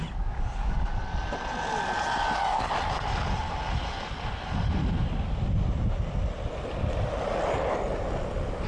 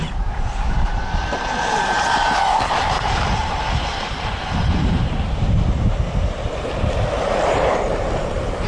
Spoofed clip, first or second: second